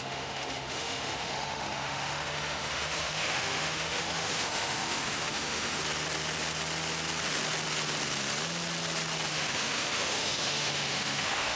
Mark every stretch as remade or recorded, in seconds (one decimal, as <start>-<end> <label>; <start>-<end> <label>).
0.0-5.8 remade; 5.8-9.3 recorded; 9.3-11.6 remade